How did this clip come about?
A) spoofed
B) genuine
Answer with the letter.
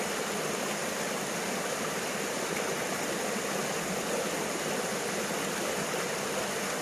B